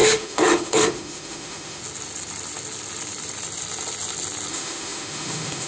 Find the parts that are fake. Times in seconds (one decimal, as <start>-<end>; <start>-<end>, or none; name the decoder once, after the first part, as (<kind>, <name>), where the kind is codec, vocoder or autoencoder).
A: 0.0-1.8 (autoencoder, DAC-VAE); 4.5-5.7